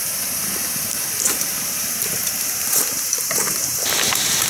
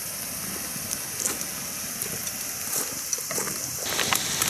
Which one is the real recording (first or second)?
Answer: second